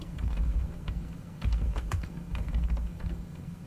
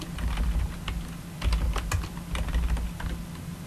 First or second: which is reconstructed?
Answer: first